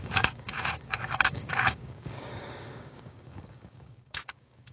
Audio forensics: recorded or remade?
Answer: remade